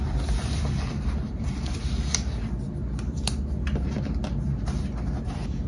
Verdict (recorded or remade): recorded